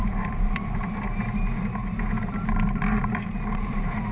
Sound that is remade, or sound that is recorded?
remade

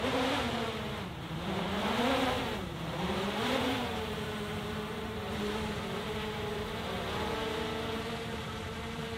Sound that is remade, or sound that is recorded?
remade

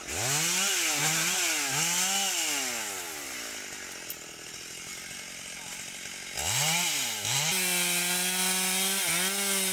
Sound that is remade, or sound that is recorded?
recorded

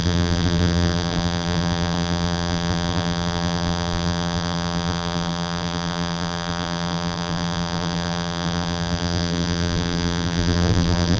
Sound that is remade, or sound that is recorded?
remade